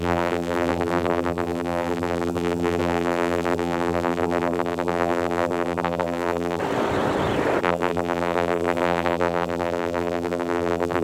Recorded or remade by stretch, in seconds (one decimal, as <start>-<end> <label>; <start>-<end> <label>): 0.0-6.6 remade; 6.6-7.6 recorded; 7.6-11.0 remade